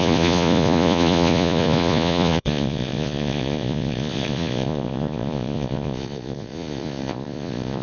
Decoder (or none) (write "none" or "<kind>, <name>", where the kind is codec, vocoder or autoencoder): vocoder, Vocos